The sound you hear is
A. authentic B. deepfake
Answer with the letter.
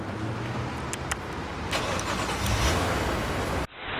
A